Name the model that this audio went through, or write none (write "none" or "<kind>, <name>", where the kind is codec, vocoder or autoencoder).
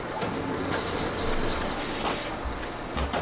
none